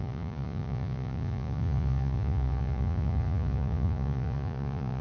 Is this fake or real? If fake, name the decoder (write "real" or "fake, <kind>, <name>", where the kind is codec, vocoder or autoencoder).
fake, vocoder, Vocos